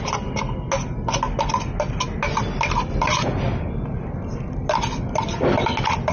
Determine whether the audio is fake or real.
real